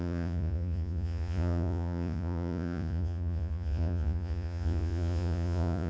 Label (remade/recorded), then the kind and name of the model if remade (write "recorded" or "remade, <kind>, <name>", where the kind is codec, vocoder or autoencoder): remade, vocoder, Vocos